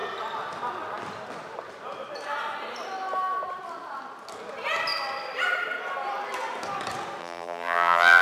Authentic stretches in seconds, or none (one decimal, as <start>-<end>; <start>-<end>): 0.0-7.2